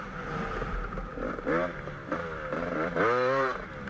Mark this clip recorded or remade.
remade